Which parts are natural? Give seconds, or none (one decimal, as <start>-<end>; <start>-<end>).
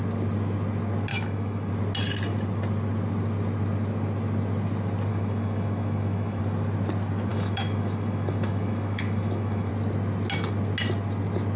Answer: 0.0-1.1; 1.7-5.1; 6.4-7.3; 9.7-11.6